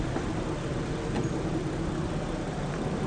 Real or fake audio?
real